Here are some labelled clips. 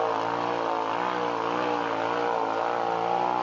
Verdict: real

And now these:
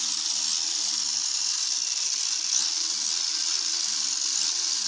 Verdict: real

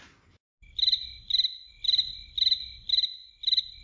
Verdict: real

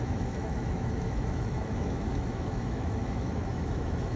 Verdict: fake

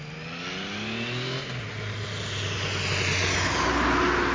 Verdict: real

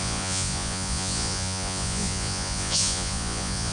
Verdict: fake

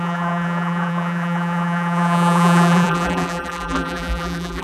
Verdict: fake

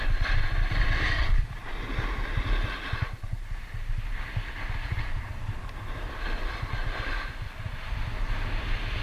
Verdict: real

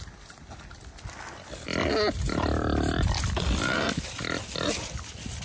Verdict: real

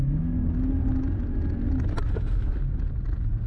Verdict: real